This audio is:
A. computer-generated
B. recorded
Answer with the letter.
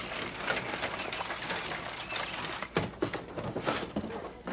B